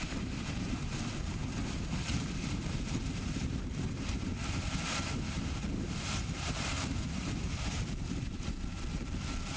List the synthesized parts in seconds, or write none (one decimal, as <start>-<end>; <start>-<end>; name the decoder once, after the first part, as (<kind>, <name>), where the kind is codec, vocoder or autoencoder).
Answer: 0.0-1.4 (vocoder, BigVGAN v2); 2.0-9.6